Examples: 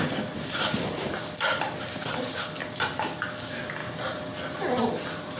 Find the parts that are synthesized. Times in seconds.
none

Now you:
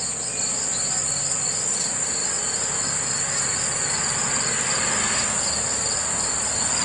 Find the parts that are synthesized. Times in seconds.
none

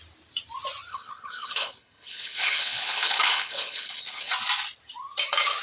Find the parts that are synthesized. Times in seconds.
0.9-4.3 (codec, HILCodec)

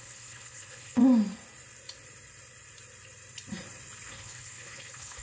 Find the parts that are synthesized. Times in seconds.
0.0-1.0 (codec, HILCodec); 4.1-5.2

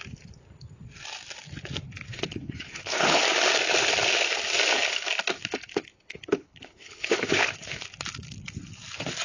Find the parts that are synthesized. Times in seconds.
2.1-3.2 (codec, HILCodec); 6.1-7.8

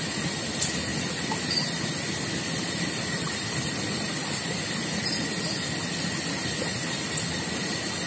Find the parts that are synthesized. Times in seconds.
none